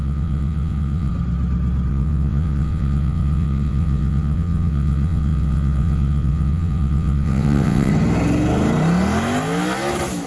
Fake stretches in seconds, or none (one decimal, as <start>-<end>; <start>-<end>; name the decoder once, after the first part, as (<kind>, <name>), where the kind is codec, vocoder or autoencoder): 0.0-1.1 (vocoder, WaveNeXt); 1.9-7.9

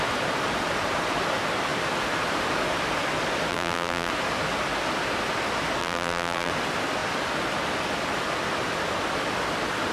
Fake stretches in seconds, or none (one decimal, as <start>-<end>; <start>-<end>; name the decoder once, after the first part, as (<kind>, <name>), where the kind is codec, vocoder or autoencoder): 3.5-4.1 (vocoder, BigVGAN v2); 5.8-6.5

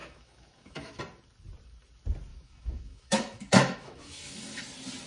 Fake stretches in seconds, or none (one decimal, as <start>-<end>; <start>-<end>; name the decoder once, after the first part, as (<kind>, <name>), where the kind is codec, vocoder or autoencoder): 0.0-1.0 (autoencoder, DAC-VAE); 2.3-4.6

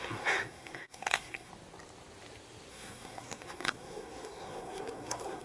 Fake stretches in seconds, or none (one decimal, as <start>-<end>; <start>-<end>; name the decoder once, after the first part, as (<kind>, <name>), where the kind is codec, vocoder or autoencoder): 0.0-1.5 (codec, SNAC); 2.7-5.4

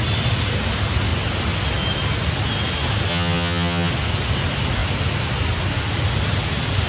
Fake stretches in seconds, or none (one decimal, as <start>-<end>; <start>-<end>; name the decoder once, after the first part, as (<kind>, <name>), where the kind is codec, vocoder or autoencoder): 3.1-3.9 (vocoder, HiFi-GAN)

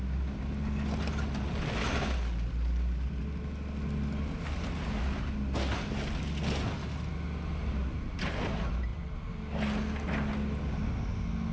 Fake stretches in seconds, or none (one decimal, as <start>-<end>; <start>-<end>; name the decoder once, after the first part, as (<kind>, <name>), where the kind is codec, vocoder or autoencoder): none

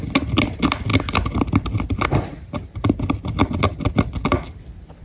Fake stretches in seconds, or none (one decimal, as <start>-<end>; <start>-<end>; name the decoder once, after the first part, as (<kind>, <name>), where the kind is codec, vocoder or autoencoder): none

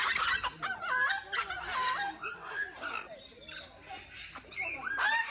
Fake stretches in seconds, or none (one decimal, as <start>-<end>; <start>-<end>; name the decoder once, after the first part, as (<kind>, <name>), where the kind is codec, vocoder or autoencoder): none